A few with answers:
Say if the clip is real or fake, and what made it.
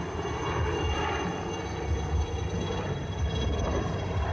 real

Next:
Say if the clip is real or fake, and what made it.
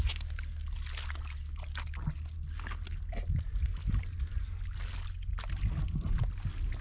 real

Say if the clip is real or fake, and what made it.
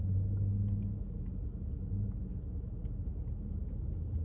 real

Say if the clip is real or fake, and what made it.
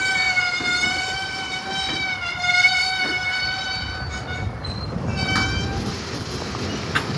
real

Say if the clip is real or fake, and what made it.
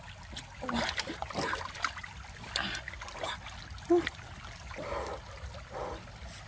real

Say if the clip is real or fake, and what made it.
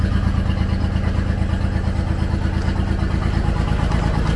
real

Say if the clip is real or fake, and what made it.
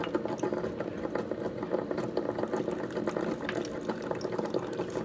real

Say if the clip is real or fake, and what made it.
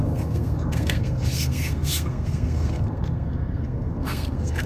fake, codec, SNAC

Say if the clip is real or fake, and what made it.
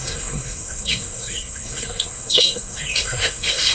fake, codec, SNAC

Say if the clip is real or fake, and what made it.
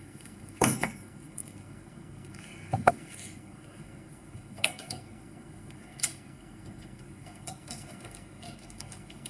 fake, codec, SNAC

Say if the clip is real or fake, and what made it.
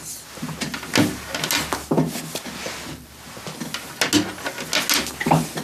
real